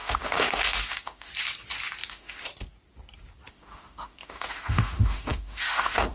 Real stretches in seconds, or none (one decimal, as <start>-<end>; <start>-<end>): 1.3-2.1; 2.5-3.5